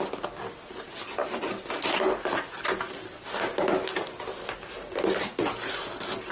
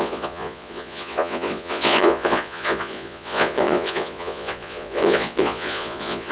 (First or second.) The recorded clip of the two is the first